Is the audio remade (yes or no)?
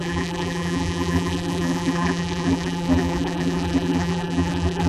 yes